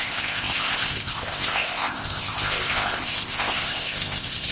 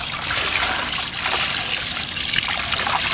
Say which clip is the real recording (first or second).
second